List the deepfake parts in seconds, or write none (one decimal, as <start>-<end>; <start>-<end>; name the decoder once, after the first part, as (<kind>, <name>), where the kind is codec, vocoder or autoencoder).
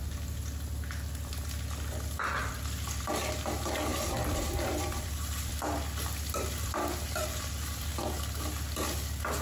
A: 2.4-3.0 (vocoder, BigVGAN v2); 3.9-5.5